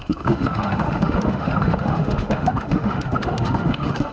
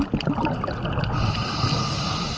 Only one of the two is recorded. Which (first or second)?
second